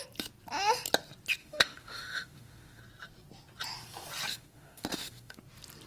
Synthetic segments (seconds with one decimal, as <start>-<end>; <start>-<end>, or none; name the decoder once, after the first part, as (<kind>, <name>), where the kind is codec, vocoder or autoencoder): 1.4-2.8 (autoencoder, DAC-VAE); 4.3-5.4